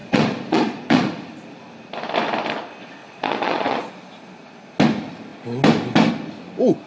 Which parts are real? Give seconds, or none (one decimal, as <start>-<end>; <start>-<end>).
1.2-3.0; 3.9-6.9

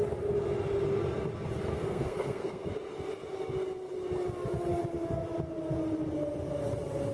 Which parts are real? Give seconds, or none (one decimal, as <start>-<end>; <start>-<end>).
0.0-1.7; 2.7-7.1

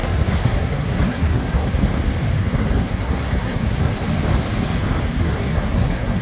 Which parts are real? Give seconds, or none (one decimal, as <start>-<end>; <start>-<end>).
1.7-2.4; 3.9-5.2

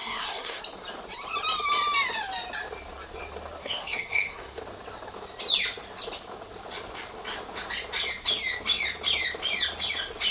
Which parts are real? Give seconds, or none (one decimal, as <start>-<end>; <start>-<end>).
0.6-3.6; 4.6-10.3

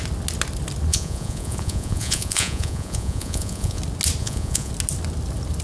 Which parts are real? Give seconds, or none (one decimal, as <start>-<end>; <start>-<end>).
0.0-0.9; 3.8-4.2; 4.7-5.6

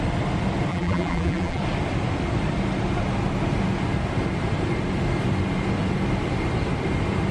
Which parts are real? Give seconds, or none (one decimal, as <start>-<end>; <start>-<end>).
0.0-0.7; 1.6-7.3